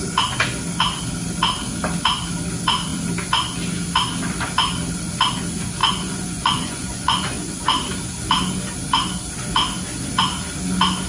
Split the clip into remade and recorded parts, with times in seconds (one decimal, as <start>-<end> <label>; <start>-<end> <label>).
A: 0.0-5.8 recorded; 5.8-7.6 remade; 7.6-11.1 recorded